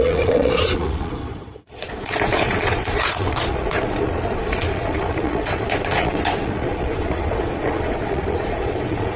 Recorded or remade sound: remade